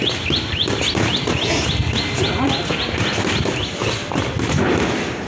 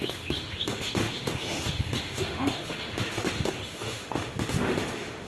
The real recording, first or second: first